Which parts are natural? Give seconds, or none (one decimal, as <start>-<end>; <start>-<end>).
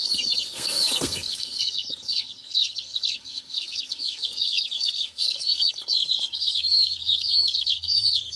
none